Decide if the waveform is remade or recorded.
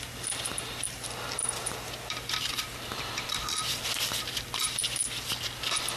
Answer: remade